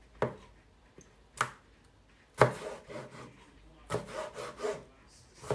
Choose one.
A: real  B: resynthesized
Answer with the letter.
A